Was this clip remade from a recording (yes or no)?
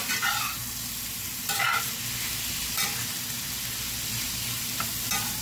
no